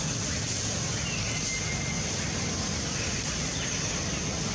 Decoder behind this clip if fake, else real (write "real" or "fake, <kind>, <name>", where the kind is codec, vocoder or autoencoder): real